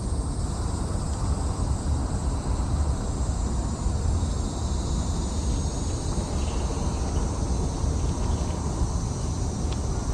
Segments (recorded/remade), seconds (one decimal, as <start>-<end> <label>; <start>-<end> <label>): 0.0-10.1 recorded